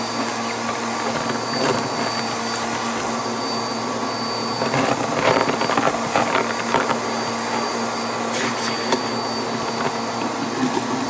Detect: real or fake real